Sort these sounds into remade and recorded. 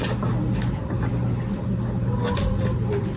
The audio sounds recorded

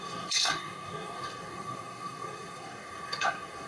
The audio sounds remade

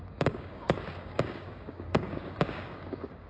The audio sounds remade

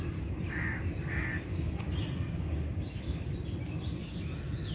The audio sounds recorded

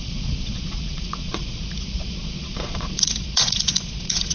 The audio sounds remade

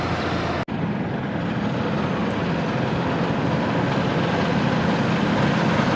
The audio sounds recorded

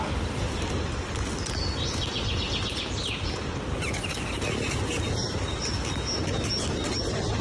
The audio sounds recorded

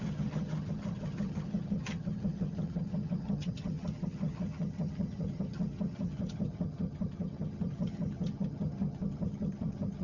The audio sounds remade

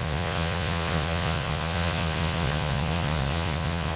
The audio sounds remade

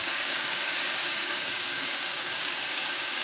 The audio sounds remade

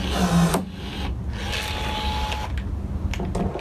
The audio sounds recorded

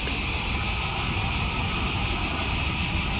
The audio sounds recorded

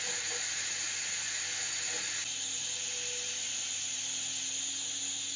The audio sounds recorded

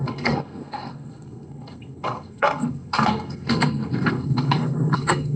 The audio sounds remade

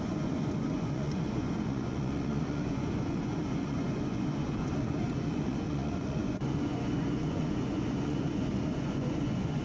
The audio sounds remade